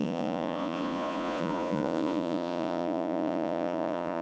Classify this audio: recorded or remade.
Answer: remade